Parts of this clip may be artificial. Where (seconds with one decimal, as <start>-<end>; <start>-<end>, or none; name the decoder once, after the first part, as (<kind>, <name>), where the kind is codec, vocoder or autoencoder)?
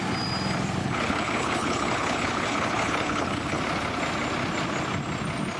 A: 0.8-3.6 (codec, HILCodec)